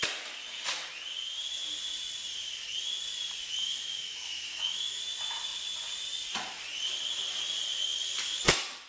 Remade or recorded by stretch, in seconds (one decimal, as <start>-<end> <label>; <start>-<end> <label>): 0.0-3.6 recorded; 3.6-5.0 remade; 5.0-8.9 recorded